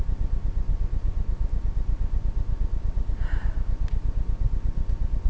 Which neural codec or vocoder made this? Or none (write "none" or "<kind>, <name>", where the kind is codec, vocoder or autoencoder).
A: vocoder, BigVGAN v2